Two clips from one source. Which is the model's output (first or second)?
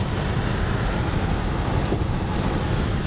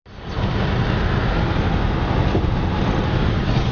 first